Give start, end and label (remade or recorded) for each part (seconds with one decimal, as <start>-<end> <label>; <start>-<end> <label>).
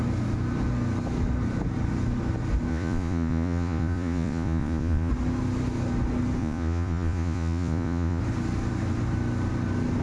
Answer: 0.0-2.7 recorded; 2.7-5.1 remade; 5.1-6.4 recorded; 6.4-8.2 remade; 8.2-10.0 recorded